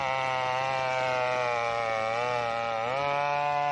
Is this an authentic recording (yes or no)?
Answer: yes